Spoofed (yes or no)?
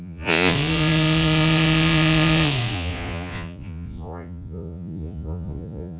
yes